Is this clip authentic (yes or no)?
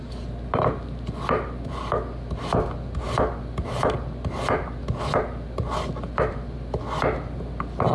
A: yes